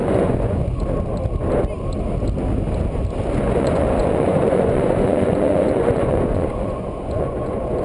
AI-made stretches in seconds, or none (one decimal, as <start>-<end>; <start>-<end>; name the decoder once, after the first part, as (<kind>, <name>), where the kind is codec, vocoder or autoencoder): 0.0-0.8 (vocoder, Vocos); 3.4-7.8